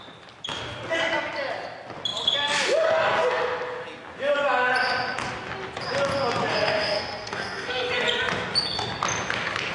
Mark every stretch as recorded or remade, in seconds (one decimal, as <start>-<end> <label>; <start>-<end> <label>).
0.0-6.5 recorded; 6.5-7.9 remade; 7.9-9.7 recorded